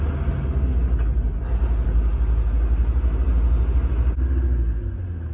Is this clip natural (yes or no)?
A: yes